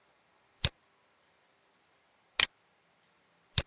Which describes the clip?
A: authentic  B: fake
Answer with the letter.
A